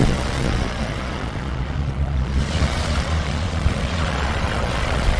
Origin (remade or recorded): remade